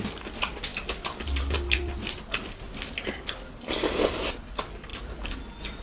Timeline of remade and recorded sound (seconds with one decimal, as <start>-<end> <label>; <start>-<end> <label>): 0.0-5.8 recorded